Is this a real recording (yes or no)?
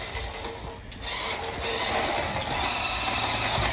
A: yes